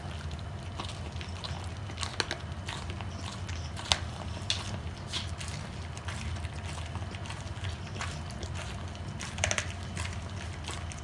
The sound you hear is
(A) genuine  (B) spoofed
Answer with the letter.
A